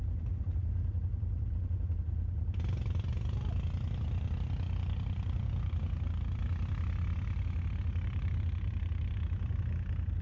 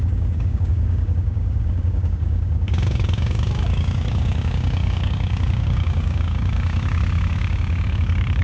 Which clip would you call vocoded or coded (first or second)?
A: second